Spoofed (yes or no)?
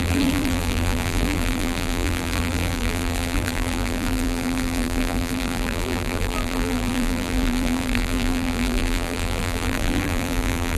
yes